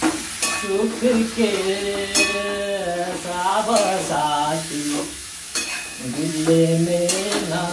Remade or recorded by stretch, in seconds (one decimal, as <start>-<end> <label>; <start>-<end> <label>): 0.0-3.5 recorded; 3.5-6.3 remade; 6.3-7.7 recorded